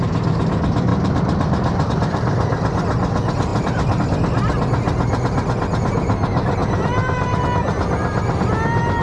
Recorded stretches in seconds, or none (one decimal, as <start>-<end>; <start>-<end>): 0.0-0.9; 1.9-3.5; 4.0-6.6; 7.4-9.0